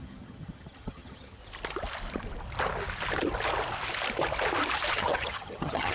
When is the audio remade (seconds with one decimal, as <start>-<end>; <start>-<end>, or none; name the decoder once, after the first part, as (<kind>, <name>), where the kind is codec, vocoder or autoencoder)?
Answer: 0.0-1.4 (vocoder, HiFi-GAN); 4.9-5.9